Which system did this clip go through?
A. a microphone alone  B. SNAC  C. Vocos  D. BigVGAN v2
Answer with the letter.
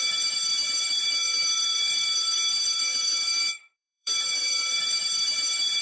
D